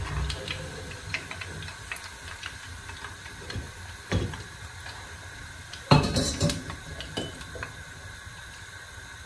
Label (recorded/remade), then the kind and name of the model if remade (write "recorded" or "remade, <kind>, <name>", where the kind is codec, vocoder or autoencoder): remade, vocoder, BigVGAN v2